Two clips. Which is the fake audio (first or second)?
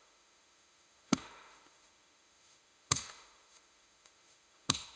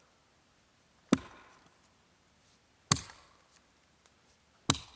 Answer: first